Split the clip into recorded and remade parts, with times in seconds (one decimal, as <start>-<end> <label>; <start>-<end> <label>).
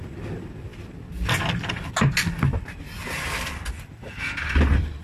0.0-5.0 recorded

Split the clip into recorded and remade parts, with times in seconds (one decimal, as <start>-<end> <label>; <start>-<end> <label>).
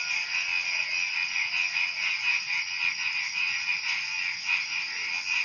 0.0-5.4 recorded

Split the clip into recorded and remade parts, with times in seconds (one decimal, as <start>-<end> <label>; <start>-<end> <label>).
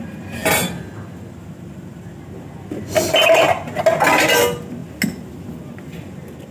0.0-6.5 recorded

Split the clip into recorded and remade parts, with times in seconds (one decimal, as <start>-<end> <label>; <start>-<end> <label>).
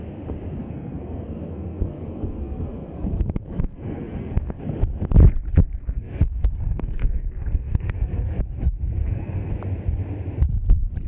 0.0-0.6 recorded; 0.6-4.6 remade; 4.6-5.8 recorded; 5.8-8.4 remade; 8.4-9.0 recorded; 9.0-9.5 remade; 9.5-11.1 recorded